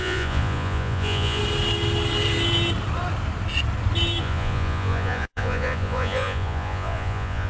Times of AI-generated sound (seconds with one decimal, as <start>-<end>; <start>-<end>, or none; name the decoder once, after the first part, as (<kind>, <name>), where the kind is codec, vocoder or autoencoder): 0.0-1.4 (vocoder, Vocos); 4.2-7.5